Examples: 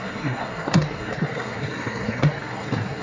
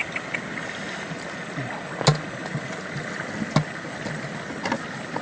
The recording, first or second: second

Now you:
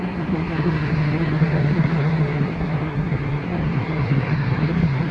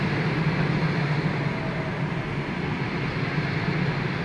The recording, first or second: second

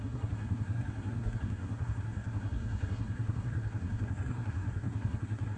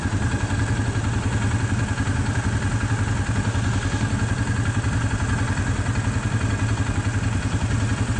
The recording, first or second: second